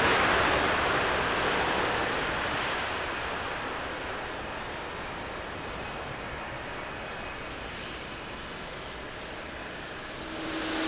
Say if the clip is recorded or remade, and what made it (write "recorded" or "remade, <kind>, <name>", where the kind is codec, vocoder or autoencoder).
recorded